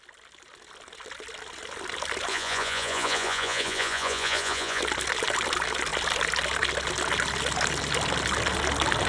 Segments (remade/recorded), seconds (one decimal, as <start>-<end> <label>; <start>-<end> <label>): 0.0-2.3 recorded; 2.3-4.8 remade; 4.8-9.1 recorded